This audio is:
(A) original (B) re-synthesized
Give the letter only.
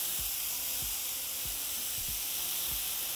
A